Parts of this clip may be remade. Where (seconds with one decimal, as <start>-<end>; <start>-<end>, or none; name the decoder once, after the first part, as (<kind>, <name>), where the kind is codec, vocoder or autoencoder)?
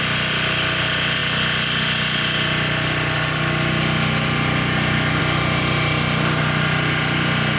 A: none